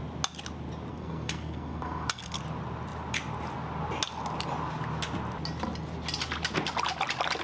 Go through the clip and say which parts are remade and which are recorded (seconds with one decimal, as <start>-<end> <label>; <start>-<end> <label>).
0.0-0.9 recorded; 0.9-2.4 remade; 2.4-7.4 recorded